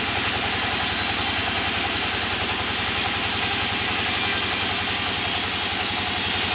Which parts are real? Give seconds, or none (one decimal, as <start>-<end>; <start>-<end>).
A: 0.0-6.5